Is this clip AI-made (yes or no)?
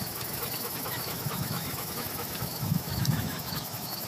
yes